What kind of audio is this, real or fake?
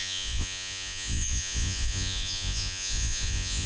fake